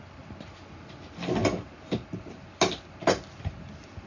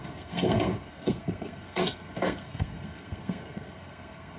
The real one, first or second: first